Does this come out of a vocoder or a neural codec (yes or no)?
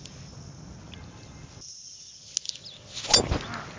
no